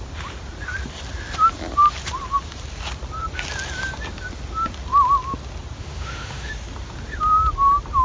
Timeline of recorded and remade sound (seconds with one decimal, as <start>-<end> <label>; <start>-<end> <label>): 0.0-5.8 recorded; 5.8-6.5 remade; 6.5-8.0 recorded